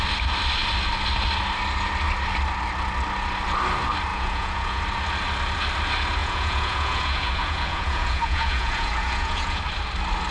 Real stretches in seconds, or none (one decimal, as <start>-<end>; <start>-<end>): 0.0-4.1; 4.8-6.2; 9.6-10.3